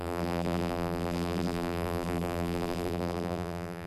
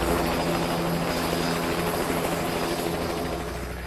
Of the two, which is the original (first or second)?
second